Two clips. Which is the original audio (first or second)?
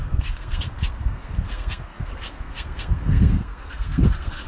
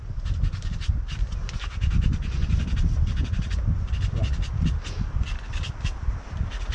second